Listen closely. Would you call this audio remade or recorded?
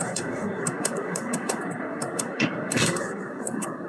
remade